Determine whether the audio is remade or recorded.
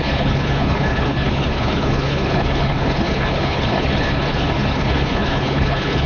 remade